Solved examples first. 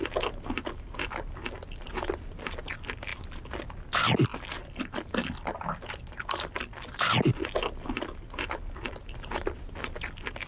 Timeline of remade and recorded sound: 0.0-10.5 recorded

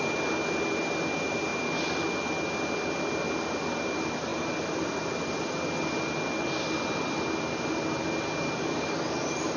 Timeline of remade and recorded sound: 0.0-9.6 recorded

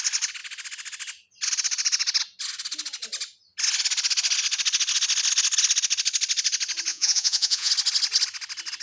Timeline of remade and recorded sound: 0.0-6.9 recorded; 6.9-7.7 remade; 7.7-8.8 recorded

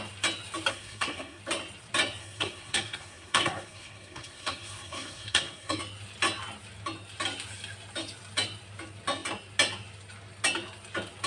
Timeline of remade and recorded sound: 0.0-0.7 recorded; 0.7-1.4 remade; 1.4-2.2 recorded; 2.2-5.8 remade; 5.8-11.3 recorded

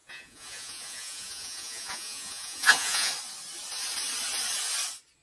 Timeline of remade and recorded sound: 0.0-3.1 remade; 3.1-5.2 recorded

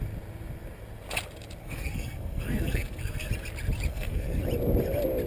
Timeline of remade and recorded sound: 0.0-1.6 recorded; 1.6-3.3 remade; 3.3-3.9 recorded; 3.9-4.4 remade; 4.4-5.3 recorded

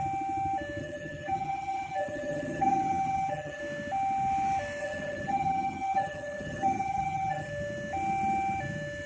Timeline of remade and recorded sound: 0.0-0.8 recorded; 0.8-3.6 remade; 3.6-4.8 recorded; 4.8-7.5 remade; 7.5-9.1 recorded